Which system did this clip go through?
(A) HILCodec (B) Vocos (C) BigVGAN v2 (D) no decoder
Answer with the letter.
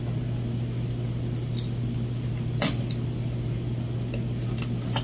D